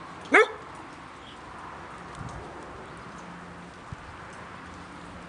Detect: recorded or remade recorded